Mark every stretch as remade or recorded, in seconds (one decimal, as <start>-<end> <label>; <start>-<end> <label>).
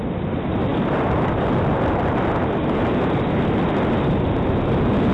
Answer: 0.0-5.1 recorded